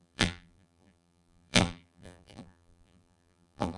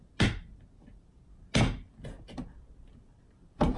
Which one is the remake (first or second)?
first